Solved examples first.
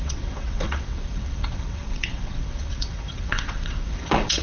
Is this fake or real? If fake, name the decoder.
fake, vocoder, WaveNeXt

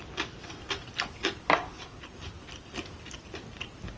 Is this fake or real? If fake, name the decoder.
real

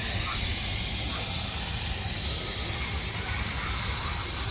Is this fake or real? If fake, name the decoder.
real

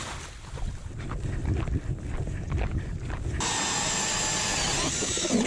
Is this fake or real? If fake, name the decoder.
real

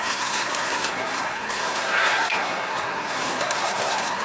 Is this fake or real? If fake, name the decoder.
fake, codec, SNAC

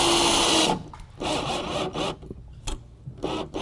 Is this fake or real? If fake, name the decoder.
real